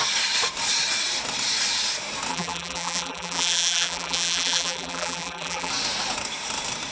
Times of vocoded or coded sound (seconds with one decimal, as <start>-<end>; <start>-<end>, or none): 2.3-5.7